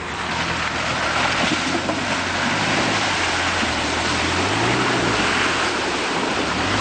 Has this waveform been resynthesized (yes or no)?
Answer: no